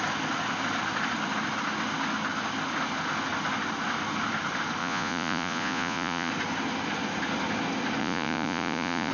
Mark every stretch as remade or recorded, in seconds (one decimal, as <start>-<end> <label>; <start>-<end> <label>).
0.0-4.8 recorded; 4.8-6.3 remade; 6.3-8.0 recorded; 8.0-9.1 remade